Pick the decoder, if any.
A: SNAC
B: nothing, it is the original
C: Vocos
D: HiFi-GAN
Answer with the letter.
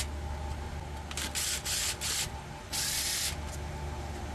B